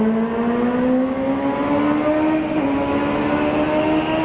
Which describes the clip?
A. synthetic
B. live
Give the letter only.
B